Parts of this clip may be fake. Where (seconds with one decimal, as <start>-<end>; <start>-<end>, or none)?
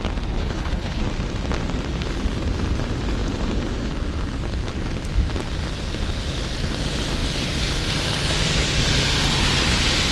0.4-1.0